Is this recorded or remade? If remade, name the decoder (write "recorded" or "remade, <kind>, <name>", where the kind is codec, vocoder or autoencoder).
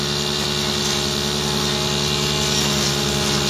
recorded